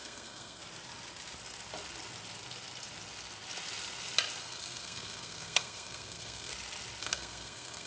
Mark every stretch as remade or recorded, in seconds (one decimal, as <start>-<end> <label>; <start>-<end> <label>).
0.0-0.6 remade; 0.6-4.4 recorded; 4.4-6.5 remade; 6.5-7.0 recorded; 7.0-7.9 remade